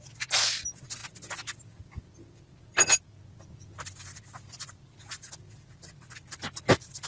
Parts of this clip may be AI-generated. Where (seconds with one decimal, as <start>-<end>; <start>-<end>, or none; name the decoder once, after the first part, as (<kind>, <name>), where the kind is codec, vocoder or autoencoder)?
none